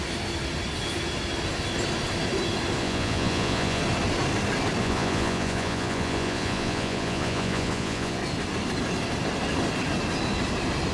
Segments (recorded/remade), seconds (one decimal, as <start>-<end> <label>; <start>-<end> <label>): 0.0-2.8 recorded; 2.8-3.8 remade; 3.8-4.8 recorded; 4.8-8.2 remade; 8.2-10.9 recorded